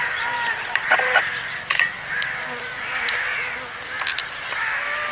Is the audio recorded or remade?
recorded